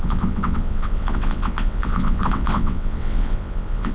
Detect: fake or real fake